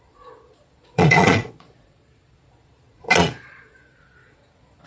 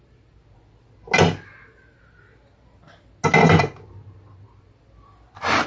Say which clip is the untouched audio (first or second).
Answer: second